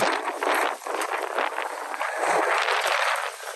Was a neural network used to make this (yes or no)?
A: no